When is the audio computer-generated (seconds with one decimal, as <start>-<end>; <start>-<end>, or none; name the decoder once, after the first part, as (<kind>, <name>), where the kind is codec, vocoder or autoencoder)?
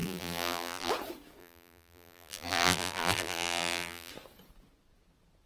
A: 0.0-0.9 (vocoder, BigVGAN v2); 1.4-4.1